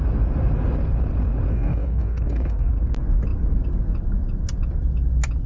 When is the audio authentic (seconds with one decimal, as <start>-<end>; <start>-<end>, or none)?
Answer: 0.0-1.5; 2.7-5.5